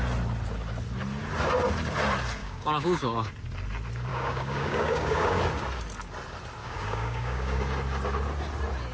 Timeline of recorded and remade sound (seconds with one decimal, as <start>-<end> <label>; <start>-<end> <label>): 0.0-2.4 recorded; 2.4-3.3 remade; 3.3-4.1 recorded; 4.1-5.4 remade; 5.4-6.6 recorded; 6.6-7.6 remade; 7.6-8.9 recorded

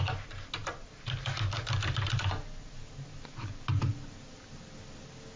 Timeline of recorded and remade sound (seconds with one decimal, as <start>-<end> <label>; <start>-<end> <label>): 0.0-5.4 recorded

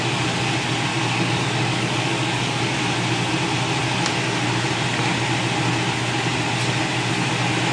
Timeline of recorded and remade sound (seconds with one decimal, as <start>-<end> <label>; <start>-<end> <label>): 0.0-0.9 recorded; 0.9-2.8 remade; 2.8-7.7 recorded

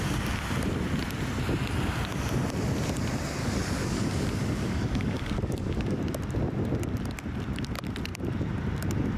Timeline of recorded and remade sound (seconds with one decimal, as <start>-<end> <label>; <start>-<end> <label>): 0.0-3.4 recorded; 3.4-6.0 remade; 6.0-9.2 recorded